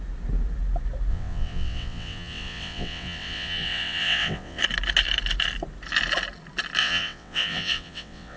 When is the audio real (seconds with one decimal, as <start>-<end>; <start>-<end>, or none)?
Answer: 0.0-1.1; 4.6-6.8